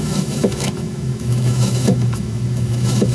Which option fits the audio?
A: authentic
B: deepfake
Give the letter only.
B